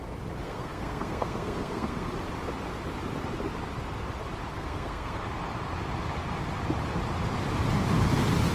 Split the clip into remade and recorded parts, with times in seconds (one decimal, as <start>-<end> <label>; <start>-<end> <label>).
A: 0.0-0.4 recorded; 0.4-2.1 remade; 2.1-4.5 recorded; 4.5-5.2 remade; 5.2-8.5 recorded